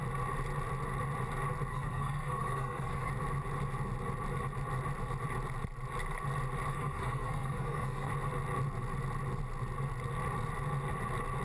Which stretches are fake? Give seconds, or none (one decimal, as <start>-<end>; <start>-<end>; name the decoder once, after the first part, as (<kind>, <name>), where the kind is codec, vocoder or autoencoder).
1.7-3.1 (codec, SNAC); 6.7-8.1